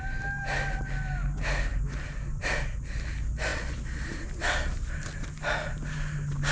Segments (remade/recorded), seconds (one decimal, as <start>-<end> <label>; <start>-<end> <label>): 0.0-6.5 recorded